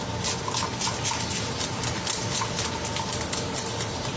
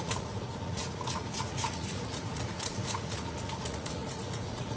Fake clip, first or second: second